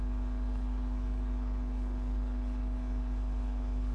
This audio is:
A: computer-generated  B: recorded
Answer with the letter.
A